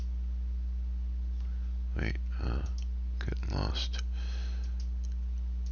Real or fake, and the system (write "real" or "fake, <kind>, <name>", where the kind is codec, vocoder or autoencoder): real